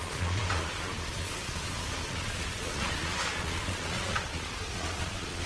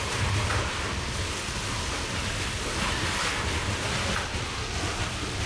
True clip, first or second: second